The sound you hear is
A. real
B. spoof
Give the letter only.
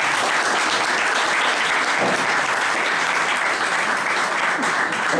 A